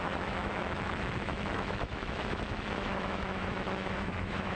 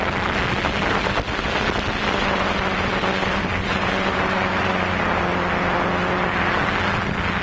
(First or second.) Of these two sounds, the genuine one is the second